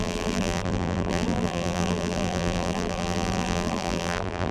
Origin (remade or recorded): remade